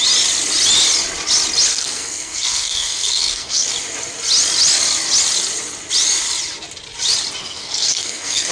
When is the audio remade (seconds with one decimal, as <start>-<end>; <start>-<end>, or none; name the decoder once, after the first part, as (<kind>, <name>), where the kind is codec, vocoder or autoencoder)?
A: 1.7-3.7 (codec, SNAC); 7.4-8.5